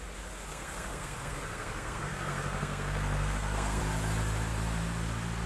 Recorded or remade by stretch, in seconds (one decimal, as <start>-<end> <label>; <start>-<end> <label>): 0.0-0.5 recorded; 0.5-3.8 remade; 3.8-5.5 recorded